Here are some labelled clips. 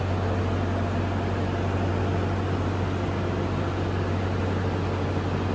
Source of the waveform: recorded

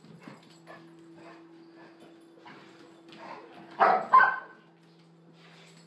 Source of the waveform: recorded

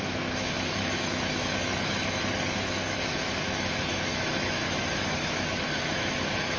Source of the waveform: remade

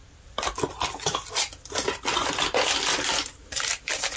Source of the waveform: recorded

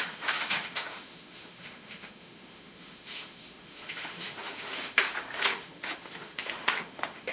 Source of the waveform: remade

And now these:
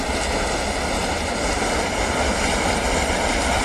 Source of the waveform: recorded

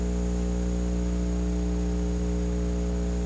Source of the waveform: recorded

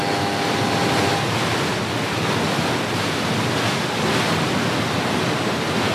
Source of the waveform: recorded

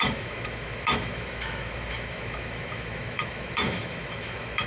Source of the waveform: remade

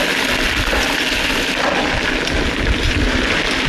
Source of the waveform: recorded